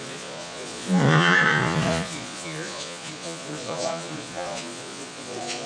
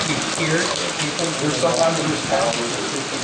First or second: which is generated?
first